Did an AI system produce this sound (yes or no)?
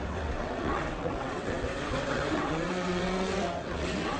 yes